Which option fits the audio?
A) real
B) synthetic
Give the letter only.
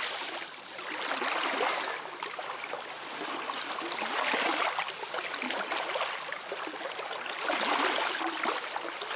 A